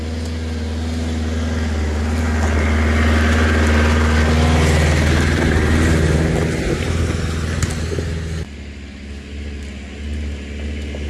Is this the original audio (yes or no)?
yes